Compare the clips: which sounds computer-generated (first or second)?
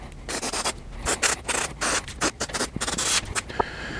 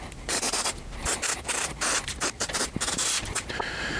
second